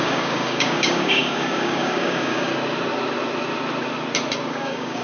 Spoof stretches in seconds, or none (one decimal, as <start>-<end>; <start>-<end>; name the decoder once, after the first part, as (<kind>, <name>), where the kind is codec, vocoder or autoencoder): 0.0-2.5 (codec, DAC); 4.5-5.0